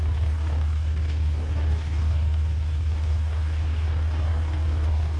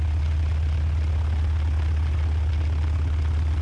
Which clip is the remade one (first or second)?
first